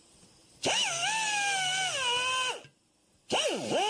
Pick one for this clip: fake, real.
real